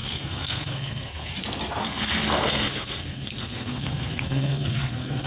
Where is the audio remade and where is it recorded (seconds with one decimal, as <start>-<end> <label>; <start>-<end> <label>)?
0.0-1.3 remade; 1.3-1.8 recorded; 1.8-5.3 remade